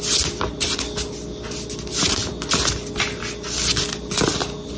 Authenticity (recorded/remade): recorded